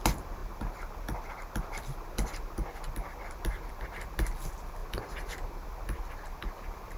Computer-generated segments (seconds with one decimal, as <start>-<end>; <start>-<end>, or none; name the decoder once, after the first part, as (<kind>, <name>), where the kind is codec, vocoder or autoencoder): none